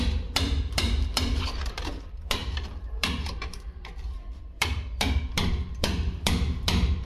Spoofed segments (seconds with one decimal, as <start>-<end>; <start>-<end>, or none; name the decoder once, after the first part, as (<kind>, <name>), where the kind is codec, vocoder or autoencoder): 0.0-7.1 (vocoder, BigVGAN v2)